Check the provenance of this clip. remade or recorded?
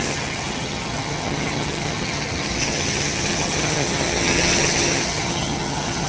remade